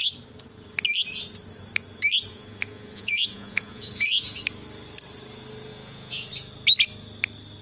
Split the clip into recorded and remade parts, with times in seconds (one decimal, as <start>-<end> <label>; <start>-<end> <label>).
0.0-2.3 recorded; 2.3-4.4 remade; 4.4-5.7 recorded; 5.7-6.3 remade; 6.3-7.6 recorded